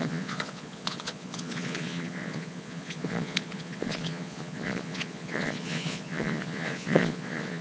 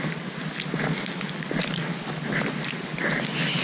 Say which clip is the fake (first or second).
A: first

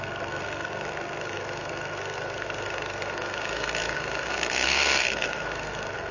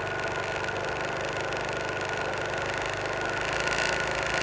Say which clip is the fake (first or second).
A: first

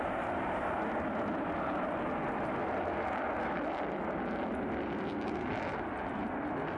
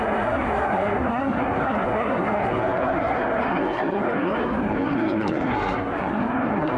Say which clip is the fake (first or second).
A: second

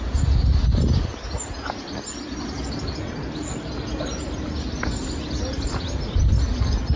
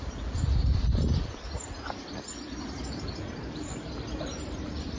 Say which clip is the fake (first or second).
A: second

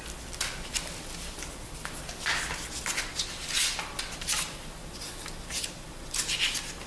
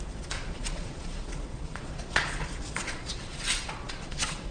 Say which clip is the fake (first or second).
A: second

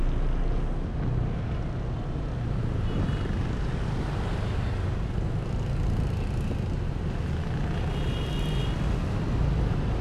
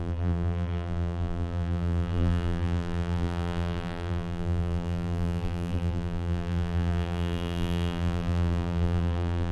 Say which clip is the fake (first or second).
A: second